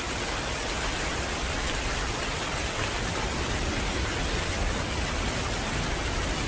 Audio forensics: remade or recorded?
recorded